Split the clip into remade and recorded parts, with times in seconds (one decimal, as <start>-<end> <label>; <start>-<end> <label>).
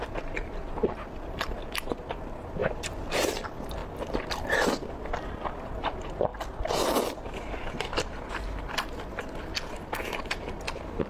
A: 0.0-3.8 remade; 3.8-4.9 recorded; 4.9-6.3 remade; 6.3-10.2 recorded; 10.2-11.1 remade